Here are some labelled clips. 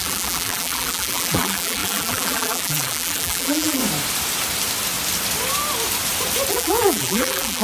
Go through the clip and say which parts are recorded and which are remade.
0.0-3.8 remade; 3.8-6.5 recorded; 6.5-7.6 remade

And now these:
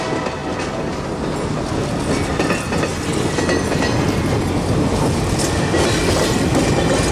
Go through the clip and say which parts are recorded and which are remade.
0.0-7.1 recorded

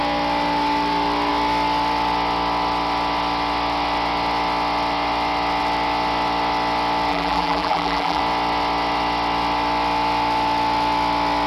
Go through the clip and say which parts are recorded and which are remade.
0.0-7.1 recorded; 7.1-8.2 remade; 8.2-11.5 recorded